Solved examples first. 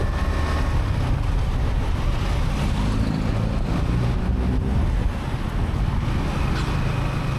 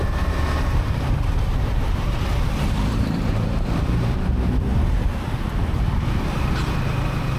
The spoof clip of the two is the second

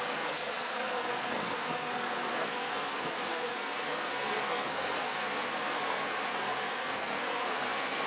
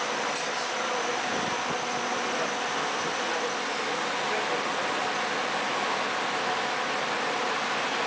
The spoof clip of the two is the first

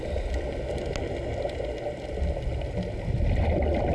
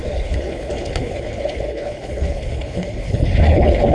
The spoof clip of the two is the second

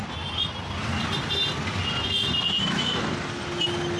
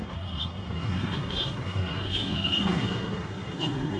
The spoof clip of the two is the second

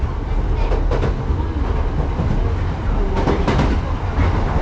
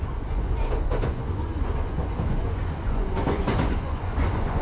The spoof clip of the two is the second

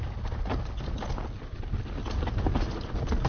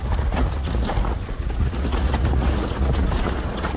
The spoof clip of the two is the second